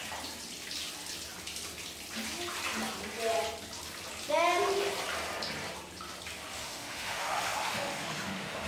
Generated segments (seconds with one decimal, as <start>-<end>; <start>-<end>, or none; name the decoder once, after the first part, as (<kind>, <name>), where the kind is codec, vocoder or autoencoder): 6.6-8.7 (autoencoder, DAC-VAE)